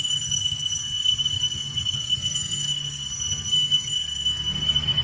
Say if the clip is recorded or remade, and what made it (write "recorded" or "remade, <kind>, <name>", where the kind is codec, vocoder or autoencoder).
remade, codec, SNAC